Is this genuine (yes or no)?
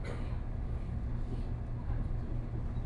yes